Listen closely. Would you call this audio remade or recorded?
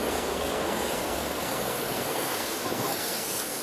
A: remade